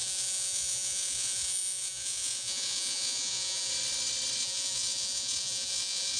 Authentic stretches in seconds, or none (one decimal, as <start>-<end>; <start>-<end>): 3.7-4.4

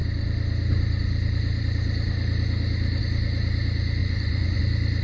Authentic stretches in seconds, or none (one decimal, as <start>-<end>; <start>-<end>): 0.0-4.0; 4.6-5.0

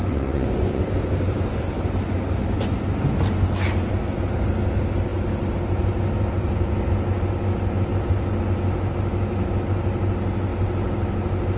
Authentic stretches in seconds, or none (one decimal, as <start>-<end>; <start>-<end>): 0.8-11.6

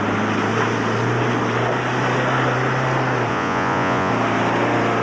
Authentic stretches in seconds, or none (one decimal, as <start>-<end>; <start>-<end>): 0.0-3.3; 4.1-5.0

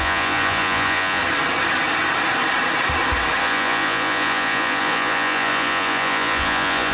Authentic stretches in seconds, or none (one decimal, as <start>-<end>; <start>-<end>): 1.2-3.4

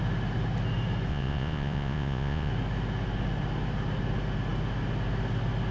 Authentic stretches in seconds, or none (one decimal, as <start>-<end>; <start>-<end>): 0.0-1.1; 2.5-5.7